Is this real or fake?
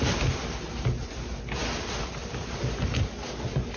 real